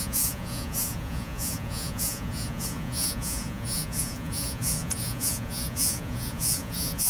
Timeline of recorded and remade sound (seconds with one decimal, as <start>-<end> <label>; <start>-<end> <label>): 0.0-7.1 remade